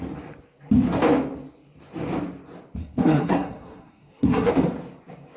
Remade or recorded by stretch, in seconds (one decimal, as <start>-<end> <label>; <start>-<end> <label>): 0.0-2.8 recorded; 2.8-4.5 remade; 4.5-5.4 recorded